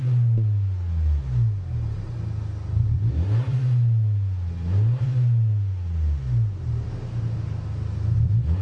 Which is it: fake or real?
real